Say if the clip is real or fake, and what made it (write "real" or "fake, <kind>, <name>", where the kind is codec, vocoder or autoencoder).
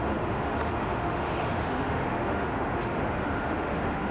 fake, autoencoder, DAC-VAE